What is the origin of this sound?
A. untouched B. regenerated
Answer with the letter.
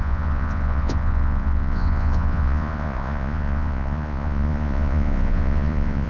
B